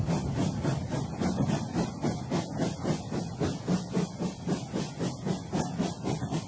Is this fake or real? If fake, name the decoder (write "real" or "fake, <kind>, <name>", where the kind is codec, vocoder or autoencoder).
real